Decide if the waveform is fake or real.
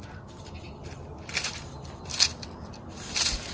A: real